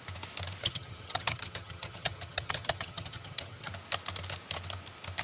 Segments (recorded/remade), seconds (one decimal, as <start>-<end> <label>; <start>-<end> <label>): 0.0-0.6 recorded; 0.6-3.7 remade; 3.7-5.2 recorded